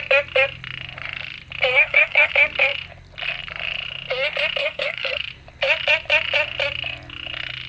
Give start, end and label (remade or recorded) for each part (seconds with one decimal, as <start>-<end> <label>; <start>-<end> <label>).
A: 0.0-1.7 recorded; 1.7-2.3 remade; 2.3-4.6 recorded; 4.6-5.3 remade; 5.3-7.7 recorded